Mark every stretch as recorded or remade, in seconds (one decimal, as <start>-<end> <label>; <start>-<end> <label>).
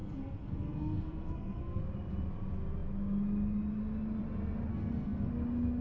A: 0.0-1.8 remade; 1.8-4.7 recorded; 4.7-5.3 remade; 5.3-5.8 recorded